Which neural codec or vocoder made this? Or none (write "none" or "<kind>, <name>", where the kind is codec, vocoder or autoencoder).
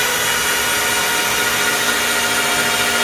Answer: none